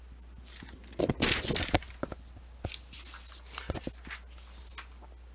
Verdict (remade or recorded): recorded